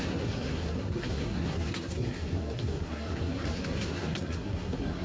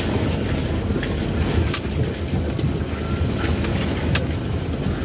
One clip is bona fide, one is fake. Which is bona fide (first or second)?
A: second